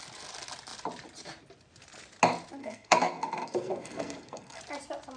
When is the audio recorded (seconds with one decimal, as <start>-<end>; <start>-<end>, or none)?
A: 0.0-2.6; 4.6-5.2